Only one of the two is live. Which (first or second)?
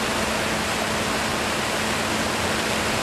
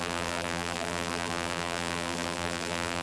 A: first